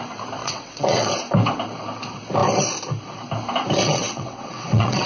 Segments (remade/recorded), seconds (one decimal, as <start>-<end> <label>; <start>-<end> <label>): 0.0-0.4 recorded; 0.4-1.1 remade; 1.1-3.8 recorded; 3.8-5.1 remade